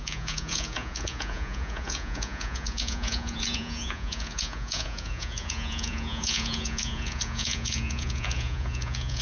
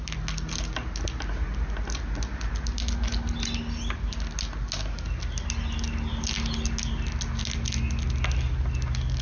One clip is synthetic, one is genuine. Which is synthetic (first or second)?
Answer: first